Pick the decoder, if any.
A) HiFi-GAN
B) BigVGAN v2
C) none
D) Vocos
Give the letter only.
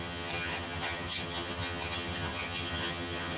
A